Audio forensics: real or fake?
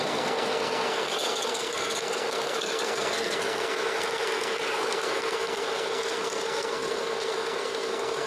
fake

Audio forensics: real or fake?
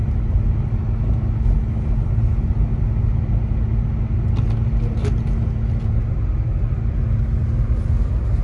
real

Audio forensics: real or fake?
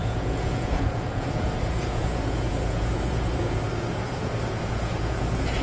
fake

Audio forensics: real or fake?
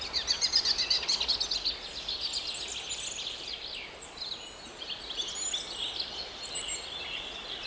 real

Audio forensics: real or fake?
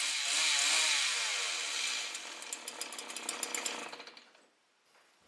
real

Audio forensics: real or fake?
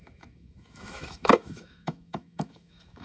fake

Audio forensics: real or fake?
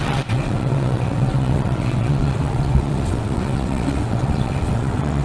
fake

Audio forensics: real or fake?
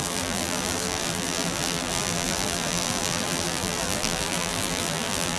fake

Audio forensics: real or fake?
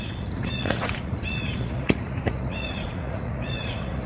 fake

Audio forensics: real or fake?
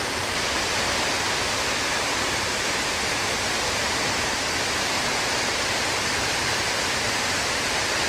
fake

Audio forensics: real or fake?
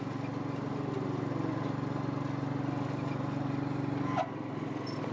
real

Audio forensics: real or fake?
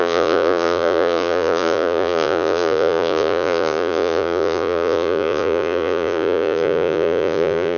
fake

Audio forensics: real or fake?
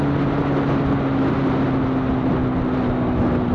real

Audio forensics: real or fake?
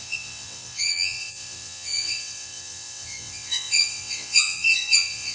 fake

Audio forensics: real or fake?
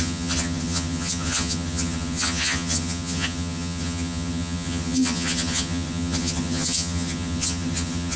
fake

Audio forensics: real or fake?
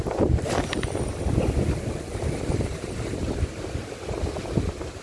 real